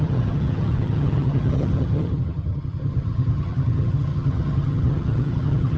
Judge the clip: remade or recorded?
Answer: remade